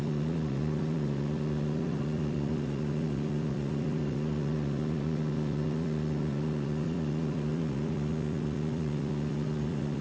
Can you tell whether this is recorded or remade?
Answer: remade